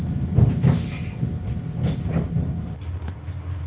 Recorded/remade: recorded